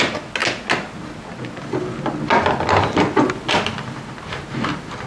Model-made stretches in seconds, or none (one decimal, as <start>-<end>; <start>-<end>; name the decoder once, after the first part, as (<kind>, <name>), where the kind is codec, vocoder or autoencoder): none